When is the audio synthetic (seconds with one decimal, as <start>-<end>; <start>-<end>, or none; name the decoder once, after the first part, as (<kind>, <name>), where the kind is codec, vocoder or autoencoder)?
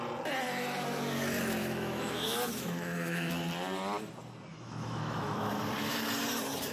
1.6-3.3 (autoencoder, DAC-VAE); 4.5-5.6